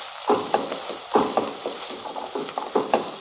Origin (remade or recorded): recorded